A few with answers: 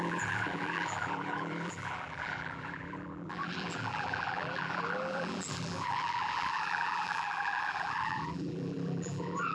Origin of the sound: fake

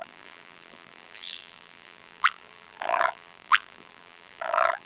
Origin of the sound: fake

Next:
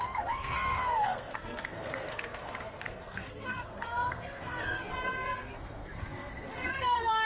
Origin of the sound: fake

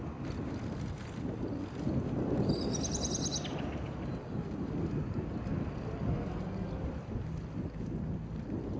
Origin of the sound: real